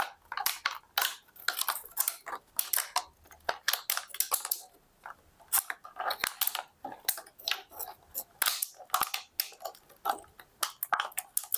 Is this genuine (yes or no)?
yes